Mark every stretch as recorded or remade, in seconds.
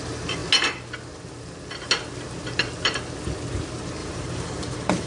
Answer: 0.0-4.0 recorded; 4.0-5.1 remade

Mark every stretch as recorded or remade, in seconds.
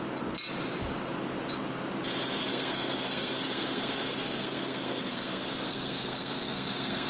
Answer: 0.0-2.5 recorded; 2.5-7.1 remade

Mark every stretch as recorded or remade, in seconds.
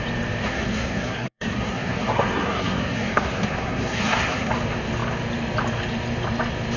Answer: 0.0-0.4 recorded; 0.4-4.5 remade; 4.5-6.8 recorded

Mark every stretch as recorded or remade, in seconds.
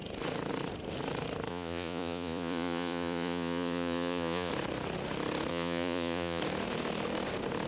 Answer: 0.0-1.5 recorded; 1.5-4.5 remade; 4.5-5.5 recorded; 5.5-6.4 remade; 6.4-7.7 recorded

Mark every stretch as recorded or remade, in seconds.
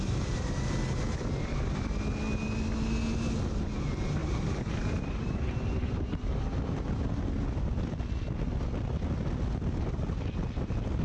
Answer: 0.0-4.2 recorded; 4.2-6.6 remade; 6.6-11.0 recorded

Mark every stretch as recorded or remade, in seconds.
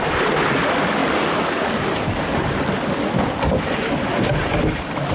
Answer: 0.0-5.1 recorded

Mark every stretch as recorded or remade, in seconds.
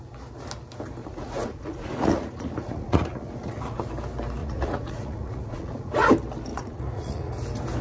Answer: 0.0-1.0 recorded; 1.0-3.9 remade; 3.9-4.4 recorded; 4.4-6.1 remade; 6.1-6.5 recorded; 6.5-7.3 remade; 7.3-7.8 recorded